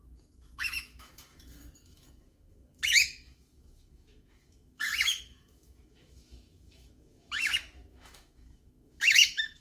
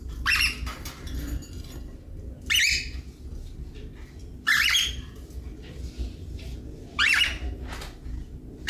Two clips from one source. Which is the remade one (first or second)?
first